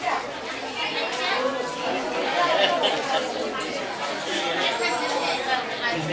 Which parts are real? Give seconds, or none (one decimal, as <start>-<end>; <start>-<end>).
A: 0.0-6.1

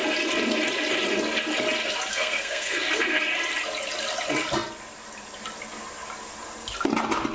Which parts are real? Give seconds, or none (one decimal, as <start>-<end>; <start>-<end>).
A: 0.0-2.1; 3.2-7.3

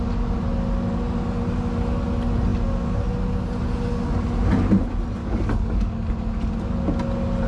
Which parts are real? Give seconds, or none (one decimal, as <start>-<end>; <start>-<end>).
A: 0.0-5.2; 6.1-7.5